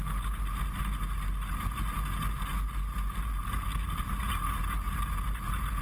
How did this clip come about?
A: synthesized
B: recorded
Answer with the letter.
B